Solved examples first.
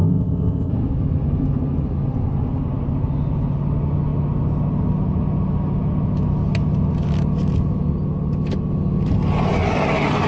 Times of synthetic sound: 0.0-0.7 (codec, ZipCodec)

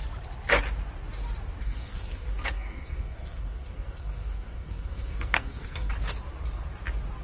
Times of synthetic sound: 1.6-5.9 (codec, SNAC)

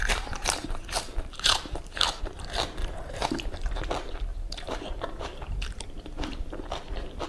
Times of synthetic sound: 0.0-2.2 (vocoder, BigVGAN v2); 2.8-3.7; 4.3-5.8

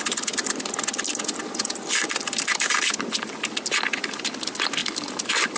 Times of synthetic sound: 1.4-2.9 (vocoder, BigVGAN v2); 4.8-5.6

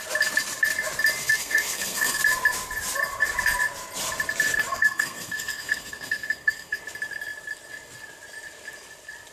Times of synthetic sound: 1.2-2.2 (codec, SNAC); 4.7-6.8

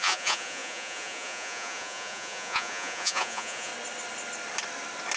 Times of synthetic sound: 0.0-3.7 (vocoder, Vocos)